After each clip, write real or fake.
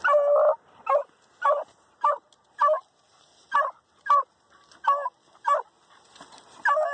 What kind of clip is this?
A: real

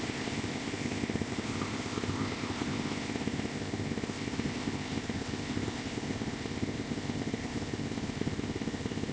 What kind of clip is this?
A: fake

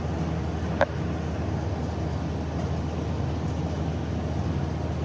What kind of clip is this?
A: real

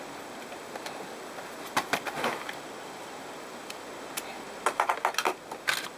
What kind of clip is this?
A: real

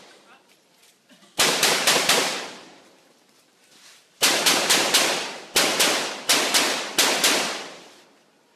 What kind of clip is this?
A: real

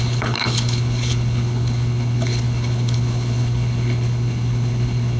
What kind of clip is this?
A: fake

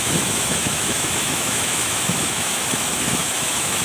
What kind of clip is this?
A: fake